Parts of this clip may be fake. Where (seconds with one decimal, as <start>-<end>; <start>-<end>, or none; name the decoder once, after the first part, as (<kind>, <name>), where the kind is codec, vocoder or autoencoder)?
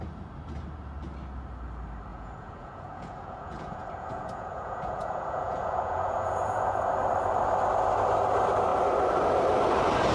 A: 2.1-6.8 (vocoder, Vocos)